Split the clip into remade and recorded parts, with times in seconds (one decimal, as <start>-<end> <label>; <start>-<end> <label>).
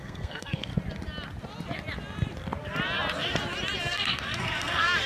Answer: 0.0-0.7 remade; 0.7-3.8 recorded; 3.8-5.1 remade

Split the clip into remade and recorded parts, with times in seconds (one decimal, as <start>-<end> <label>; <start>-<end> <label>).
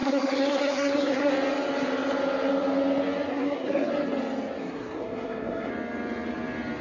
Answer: 0.0-1.3 remade; 1.3-3.3 recorded; 3.3-3.9 remade; 3.9-4.6 recorded; 4.6-5.7 remade; 5.7-6.8 recorded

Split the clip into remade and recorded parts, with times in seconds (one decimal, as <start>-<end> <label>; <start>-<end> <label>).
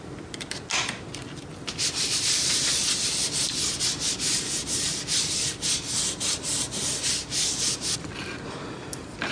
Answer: 0.0-9.3 recorded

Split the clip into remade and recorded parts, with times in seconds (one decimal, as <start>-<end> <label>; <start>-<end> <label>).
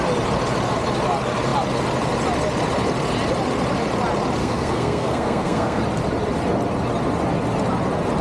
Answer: 0.0-4.4 recorded; 4.4-5.8 remade; 5.8-8.2 recorded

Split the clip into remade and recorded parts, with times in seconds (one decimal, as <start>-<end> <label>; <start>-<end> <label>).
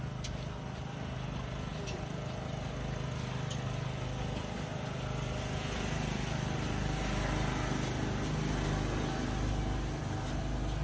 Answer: 0.0-10.8 recorded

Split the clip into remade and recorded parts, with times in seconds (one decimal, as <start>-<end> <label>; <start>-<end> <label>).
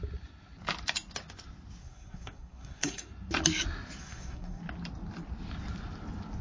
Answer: 0.0-1.8 recorded; 1.8-3.1 remade; 3.1-4.0 recorded; 4.0-4.6 remade; 4.6-6.4 recorded